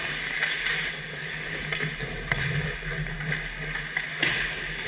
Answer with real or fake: real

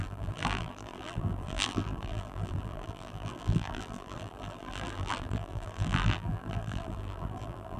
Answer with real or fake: fake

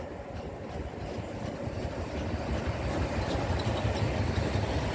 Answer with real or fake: real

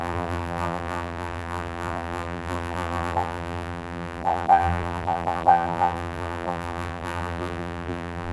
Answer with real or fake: fake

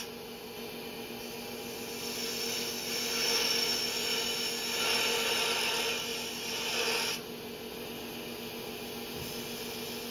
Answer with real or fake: real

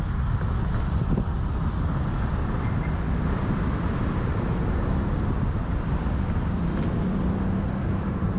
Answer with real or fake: fake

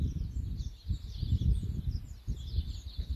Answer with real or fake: fake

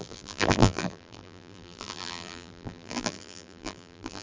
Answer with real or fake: fake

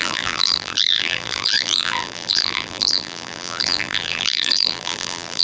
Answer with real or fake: fake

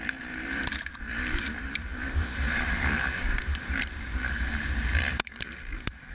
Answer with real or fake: fake